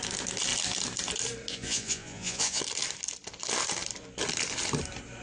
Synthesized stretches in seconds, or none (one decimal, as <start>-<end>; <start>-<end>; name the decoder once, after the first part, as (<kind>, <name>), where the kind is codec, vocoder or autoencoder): 1.5-2.6 (vocoder, Vocos)